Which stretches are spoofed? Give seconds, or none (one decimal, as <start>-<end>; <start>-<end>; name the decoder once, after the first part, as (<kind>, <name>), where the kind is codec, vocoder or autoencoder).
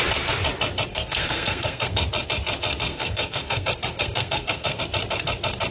0.9-2.0 (codec, SNAC); 2.9-4.8